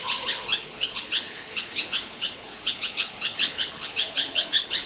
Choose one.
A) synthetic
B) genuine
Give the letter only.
A